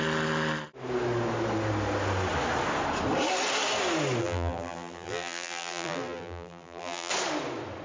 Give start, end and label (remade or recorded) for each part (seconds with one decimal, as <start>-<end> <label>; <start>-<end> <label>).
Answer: 0.0-4.2 recorded; 4.2-7.1 remade; 7.1-7.8 recorded